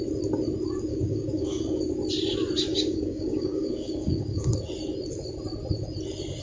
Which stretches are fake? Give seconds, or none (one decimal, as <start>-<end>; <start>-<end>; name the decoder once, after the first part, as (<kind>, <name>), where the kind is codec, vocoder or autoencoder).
0.9-1.8 (codec, DAC); 2.7-4.5